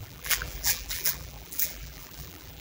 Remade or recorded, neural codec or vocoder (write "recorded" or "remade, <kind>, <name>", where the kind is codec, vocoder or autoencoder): remade, vocoder, BigVGAN v2